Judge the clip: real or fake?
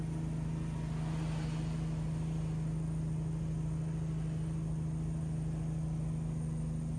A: real